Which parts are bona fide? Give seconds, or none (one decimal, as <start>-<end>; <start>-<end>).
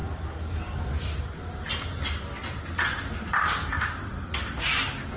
0.9-3.4; 4.0-5.2